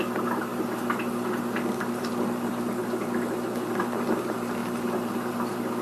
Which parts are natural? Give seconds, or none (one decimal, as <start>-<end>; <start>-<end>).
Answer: 2.8-3.7